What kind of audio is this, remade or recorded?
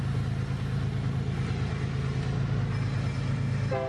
recorded